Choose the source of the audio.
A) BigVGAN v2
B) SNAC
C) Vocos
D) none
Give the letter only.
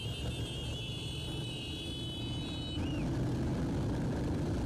D